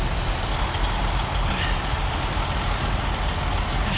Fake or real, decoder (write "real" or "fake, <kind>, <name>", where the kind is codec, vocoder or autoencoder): real